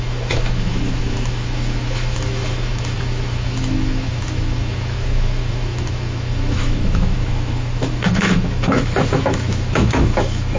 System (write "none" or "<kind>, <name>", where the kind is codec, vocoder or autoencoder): autoencoder, DAC-VAE